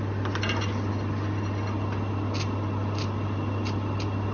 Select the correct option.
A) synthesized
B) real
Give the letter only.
B